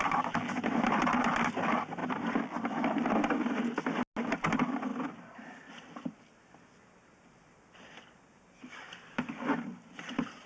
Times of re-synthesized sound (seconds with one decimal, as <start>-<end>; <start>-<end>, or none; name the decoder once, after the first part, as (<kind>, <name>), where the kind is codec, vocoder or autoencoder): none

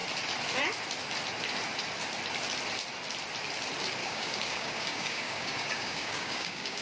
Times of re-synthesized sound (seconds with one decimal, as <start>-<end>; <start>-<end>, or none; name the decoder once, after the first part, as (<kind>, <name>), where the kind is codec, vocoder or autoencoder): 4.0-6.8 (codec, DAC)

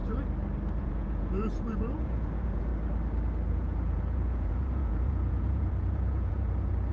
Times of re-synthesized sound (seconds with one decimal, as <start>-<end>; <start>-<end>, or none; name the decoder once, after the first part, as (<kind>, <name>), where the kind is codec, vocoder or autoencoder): 0.8-2.7 (vocoder, Vocos); 3.5-6.9

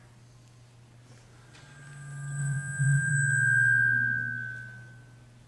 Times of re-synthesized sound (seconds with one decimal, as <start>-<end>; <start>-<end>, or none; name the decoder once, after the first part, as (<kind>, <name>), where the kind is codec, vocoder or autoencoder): 2.4-3.1 (vocoder, Vocos)